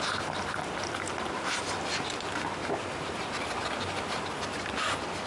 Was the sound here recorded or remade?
recorded